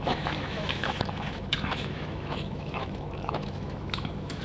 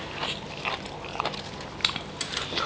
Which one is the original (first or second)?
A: second